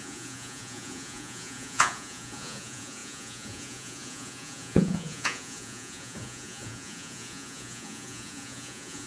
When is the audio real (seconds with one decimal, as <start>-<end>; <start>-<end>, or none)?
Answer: none